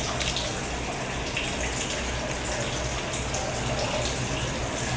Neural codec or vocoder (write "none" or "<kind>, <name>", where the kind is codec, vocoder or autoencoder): none